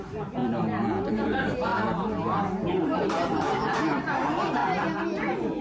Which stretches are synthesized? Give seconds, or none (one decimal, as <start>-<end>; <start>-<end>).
0.0-0.4; 1.1-1.7; 2.7-4.6